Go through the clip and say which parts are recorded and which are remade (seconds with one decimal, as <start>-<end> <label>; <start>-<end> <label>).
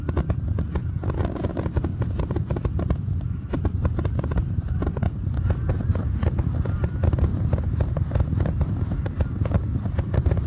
0.0-1.9 recorded; 1.9-5.4 remade; 5.4-7.3 recorded; 7.3-8.3 remade; 8.3-10.5 recorded